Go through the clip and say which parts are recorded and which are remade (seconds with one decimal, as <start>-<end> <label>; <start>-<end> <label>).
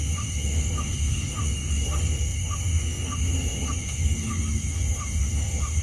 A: 0.0-5.8 remade